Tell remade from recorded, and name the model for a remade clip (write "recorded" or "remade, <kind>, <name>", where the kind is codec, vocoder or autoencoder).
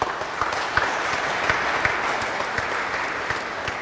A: recorded